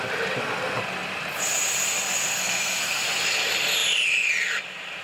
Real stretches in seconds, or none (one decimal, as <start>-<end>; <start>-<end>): 0.0-2.3; 3.0-5.0